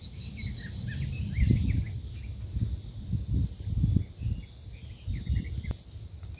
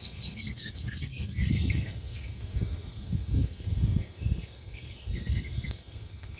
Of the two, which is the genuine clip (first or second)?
first